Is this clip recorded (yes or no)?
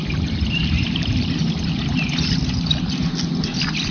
yes